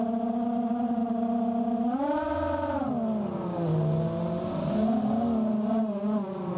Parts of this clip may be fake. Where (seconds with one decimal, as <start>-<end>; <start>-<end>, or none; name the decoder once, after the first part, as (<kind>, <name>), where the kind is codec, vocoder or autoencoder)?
none